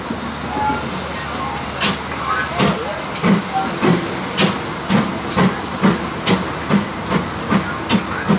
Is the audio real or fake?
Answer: real